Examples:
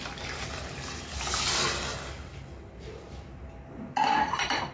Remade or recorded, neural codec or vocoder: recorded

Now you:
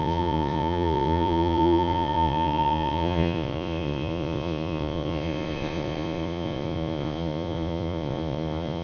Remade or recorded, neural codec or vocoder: remade, vocoder, Vocos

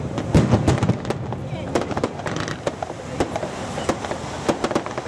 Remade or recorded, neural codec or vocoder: recorded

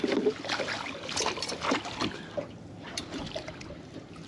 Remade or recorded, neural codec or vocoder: recorded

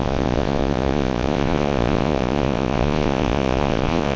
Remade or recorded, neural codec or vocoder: remade, vocoder, Vocos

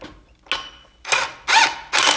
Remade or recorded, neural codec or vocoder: recorded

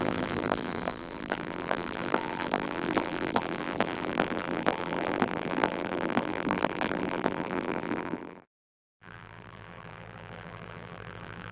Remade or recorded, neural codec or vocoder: remade, vocoder, BigVGAN v2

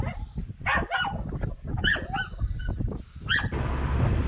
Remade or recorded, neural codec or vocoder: recorded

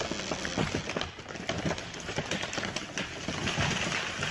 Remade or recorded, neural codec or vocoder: recorded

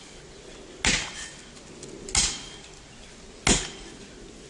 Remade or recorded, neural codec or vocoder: recorded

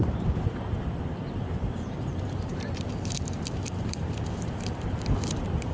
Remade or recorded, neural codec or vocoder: remade, vocoder, BigVGAN v2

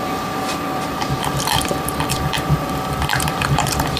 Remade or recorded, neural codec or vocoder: remade, vocoder, BigVGAN v2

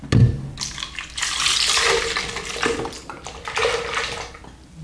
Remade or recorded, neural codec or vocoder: recorded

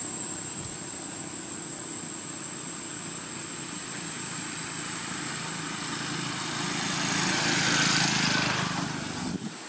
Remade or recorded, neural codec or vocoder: recorded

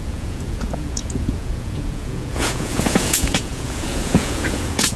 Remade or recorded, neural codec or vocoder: remade, vocoder, Vocos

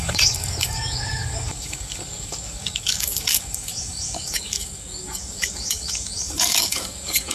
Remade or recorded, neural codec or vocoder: remade, codec, DAC